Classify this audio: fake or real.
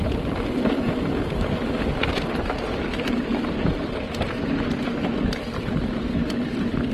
real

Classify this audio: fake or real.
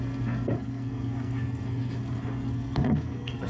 fake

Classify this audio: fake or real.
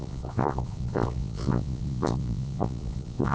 fake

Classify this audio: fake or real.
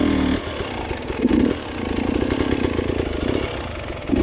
real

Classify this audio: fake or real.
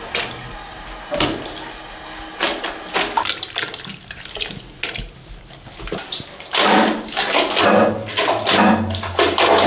real